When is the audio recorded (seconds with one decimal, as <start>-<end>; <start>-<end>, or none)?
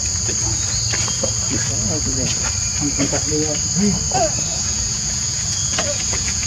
0.0-4.5